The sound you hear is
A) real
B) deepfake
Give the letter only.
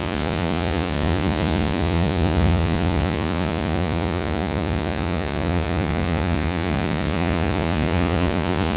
B